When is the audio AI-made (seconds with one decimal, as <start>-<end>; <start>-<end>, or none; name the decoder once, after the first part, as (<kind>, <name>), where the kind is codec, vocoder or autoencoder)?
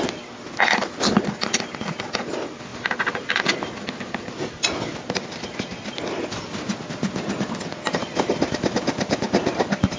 none